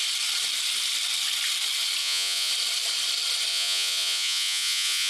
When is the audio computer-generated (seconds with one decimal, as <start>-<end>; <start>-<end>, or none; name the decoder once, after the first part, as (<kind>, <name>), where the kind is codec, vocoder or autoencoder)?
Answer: 2.0-2.5 (vocoder, Vocos); 3.5-5.1